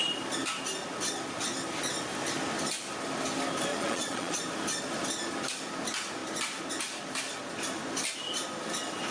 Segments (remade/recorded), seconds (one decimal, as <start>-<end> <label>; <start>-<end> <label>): 0.0-3.7 recorded; 3.7-4.4 remade; 4.4-9.1 recorded